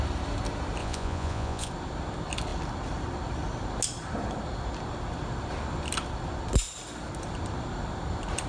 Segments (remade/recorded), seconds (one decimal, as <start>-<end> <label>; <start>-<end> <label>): 0.0-0.8 recorded; 0.8-1.7 remade; 1.7-8.5 recorded